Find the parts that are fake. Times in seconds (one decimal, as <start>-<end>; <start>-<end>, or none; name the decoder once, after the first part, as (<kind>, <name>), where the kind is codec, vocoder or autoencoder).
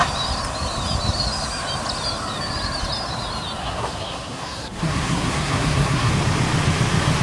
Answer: 3.6-6.1 (codec, SNAC)